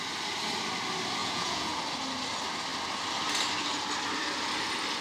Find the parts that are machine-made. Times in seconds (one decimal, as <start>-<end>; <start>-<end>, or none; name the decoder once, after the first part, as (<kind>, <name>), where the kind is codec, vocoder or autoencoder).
1.2-1.8 (vocoder, Vocos)